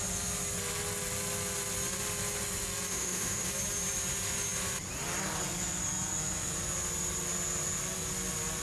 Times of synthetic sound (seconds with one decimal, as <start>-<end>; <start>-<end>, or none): 2.9-3.5